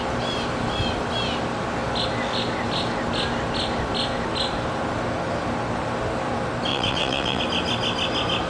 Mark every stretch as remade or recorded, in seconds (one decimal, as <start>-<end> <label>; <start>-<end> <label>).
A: 0.0-6.7 recorded; 6.7-7.4 remade; 7.4-8.5 recorded